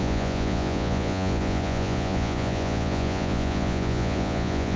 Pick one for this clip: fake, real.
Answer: fake